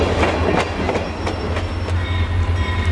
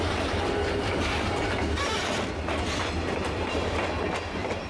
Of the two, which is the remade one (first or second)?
second